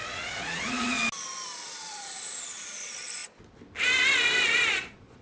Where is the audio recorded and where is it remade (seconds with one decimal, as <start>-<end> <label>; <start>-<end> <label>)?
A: 0.0-1.0 remade; 1.0-2.7 recorded; 2.7-3.2 remade; 3.2-4.7 recorded; 4.7-5.2 remade